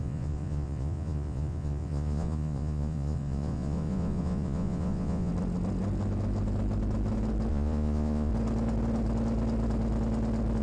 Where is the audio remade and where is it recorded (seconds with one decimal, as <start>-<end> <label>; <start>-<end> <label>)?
0.0-5.3 remade; 5.3-7.5 recorded; 7.5-8.3 remade; 8.3-10.6 recorded